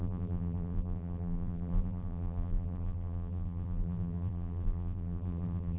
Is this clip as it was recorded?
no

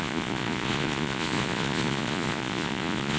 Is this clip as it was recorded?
no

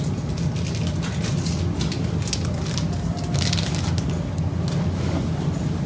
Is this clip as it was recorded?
yes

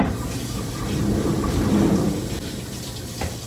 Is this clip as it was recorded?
no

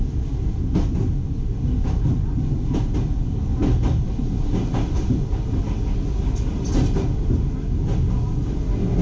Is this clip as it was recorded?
yes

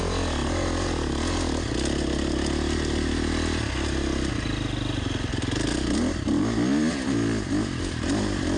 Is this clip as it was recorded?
yes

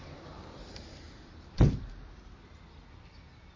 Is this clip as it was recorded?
yes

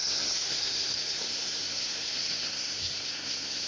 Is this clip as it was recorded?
no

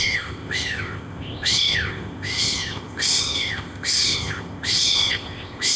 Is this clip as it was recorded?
no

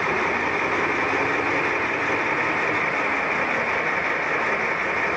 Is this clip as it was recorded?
yes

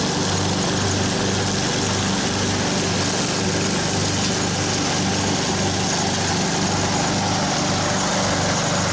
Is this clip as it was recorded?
yes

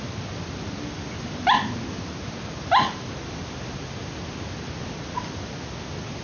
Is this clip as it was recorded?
yes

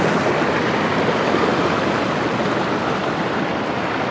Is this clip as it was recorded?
yes